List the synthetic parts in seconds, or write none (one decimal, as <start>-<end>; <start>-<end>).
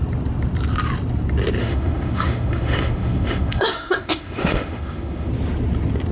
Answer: 1.6-5.3